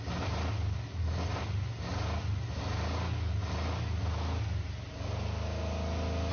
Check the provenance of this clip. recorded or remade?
recorded